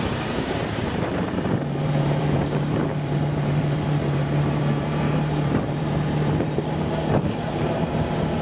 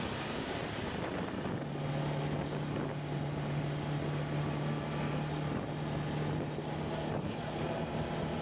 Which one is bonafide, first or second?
second